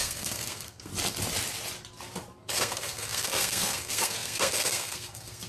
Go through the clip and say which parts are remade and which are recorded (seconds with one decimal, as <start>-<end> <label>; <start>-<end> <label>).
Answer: 0.0-0.9 remade; 0.9-2.5 recorded; 2.5-5.5 remade